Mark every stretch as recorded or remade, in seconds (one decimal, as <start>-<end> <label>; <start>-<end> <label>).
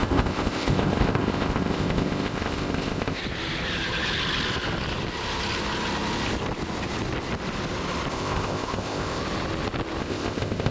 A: 0.0-3.2 remade; 3.2-8.1 recorded; 8.1-9.2 remade; 9.2-10.0 recorded; 10.0-10.7 remade